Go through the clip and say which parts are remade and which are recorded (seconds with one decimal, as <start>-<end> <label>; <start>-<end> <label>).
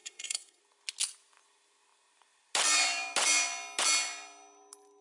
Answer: 0.0-0.6 remade; 0.6-5.0 recorded